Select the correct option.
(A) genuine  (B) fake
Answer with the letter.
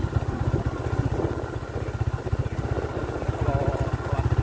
A